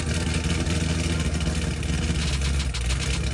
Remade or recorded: recorded